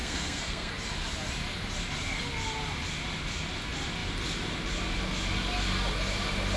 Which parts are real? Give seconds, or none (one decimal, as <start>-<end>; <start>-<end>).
0.7-6.6